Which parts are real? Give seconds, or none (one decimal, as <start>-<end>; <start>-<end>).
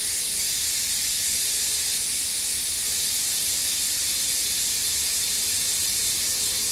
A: 2.3-3.5; 6.0-6.7